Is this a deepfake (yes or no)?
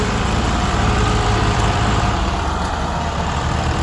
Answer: yes